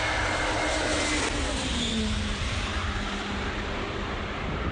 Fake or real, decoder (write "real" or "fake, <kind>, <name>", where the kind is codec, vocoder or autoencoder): real